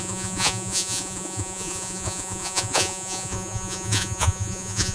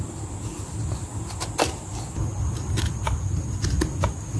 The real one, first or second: second